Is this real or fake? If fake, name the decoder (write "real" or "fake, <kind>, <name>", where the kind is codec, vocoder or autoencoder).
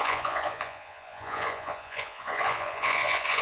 fake, vocoder, Vocos